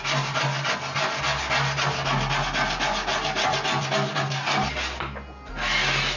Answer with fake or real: real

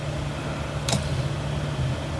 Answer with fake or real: real